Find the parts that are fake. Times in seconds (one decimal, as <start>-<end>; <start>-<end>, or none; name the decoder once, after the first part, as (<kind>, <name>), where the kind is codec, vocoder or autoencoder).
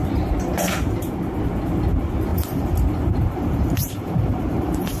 0.0-0.7 (vocoder, BigVGAN v2); 2.3-5.0